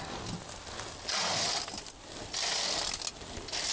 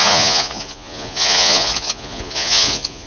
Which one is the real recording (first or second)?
first